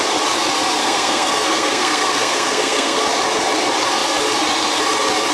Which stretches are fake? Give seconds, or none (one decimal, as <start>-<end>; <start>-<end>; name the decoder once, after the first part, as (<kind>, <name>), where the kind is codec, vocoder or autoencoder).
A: 0.8-3.0 (codec, SNAC)